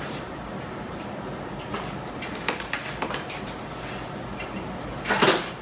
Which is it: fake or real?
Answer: real